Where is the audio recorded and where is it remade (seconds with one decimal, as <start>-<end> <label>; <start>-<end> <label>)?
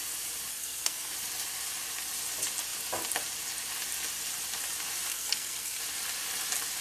0.0-0.5 recorded; 0.5-1.1 remade; 1.1-5.1 recorded; 5.1-5.8 remade; 5.8-6.8 recorded